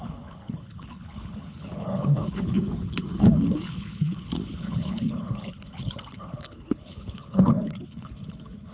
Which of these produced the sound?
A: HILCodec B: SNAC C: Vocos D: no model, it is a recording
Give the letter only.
A